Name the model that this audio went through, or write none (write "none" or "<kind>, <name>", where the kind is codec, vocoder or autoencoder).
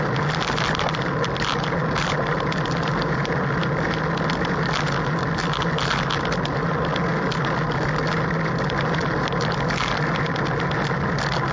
none